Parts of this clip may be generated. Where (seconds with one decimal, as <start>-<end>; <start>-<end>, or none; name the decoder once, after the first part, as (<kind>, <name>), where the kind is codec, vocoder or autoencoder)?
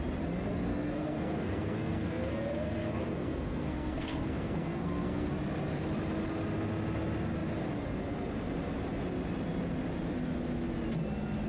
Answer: 0.7-5.3 (codec, SNAC)